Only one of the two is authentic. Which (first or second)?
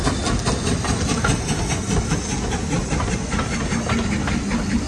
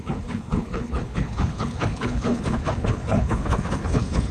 first